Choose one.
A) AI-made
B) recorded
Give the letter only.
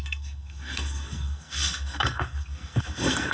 A